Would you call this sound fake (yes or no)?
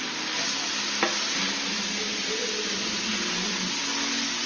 no